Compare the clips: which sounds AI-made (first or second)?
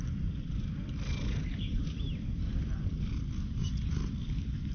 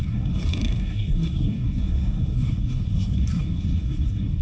second